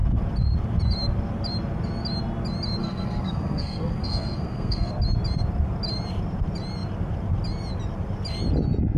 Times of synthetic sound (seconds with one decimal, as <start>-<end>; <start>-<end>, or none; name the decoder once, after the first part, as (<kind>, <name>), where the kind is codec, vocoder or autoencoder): 2.8-4.9 (codec, SNAC)